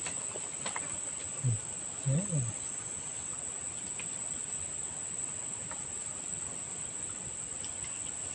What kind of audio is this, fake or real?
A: real